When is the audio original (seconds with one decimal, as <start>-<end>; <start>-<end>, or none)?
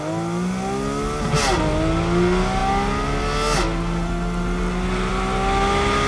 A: 0.0-6.1